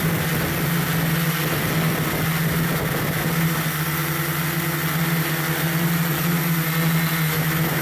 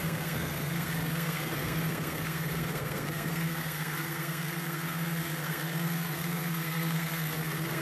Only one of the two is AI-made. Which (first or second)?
second